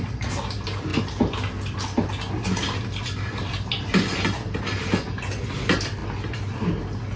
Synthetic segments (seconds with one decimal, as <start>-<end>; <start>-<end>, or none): none